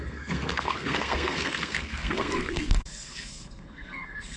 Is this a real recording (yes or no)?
no